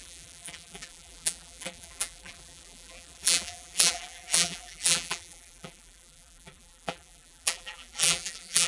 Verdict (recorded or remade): remade